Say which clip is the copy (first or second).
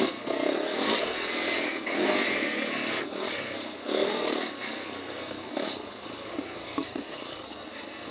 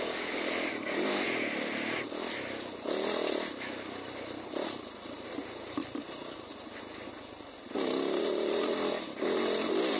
first